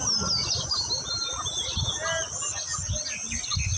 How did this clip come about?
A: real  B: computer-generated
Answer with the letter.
A